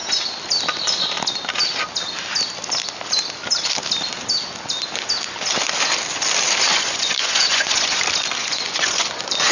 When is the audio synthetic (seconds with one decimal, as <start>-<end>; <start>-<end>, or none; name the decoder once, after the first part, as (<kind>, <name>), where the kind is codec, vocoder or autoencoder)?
6.7-8.0 (vocoder, Vocos); 8.4-9.5